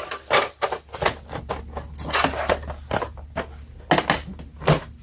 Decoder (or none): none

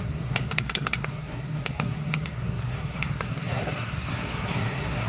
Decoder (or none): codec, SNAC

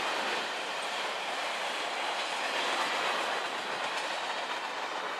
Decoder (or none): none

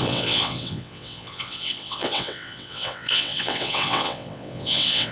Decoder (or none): vocoder, WaveNeXt